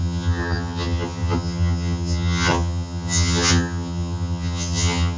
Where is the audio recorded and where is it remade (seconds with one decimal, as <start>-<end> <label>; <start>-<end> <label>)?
0.0-5.2 remade